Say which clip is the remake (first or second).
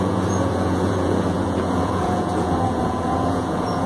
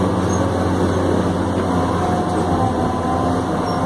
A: first